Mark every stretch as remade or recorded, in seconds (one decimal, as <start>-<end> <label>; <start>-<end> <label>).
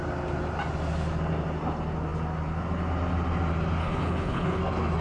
0.0-3.8 recorded; 3.8-4.6 remade; 4.6-5.0 recorded